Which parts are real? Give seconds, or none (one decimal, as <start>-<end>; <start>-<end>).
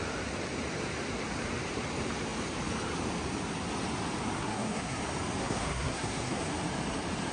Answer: 0.0-4.4; 5.0-5.4; 6.4-7.3